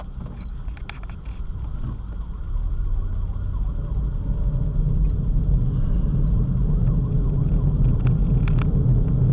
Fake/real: real